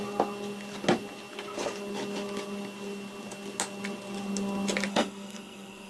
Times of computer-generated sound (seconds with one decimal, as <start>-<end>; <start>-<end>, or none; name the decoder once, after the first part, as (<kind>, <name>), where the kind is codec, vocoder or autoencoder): 4.9-5.9 (codec, SNAC)